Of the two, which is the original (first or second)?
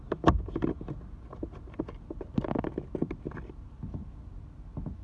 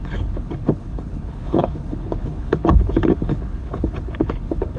first